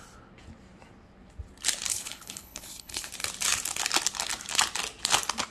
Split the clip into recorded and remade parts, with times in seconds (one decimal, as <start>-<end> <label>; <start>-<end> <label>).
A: 0.0-1.9 recorded; 1.9-3.1 remade; 3.1-5.5 recorded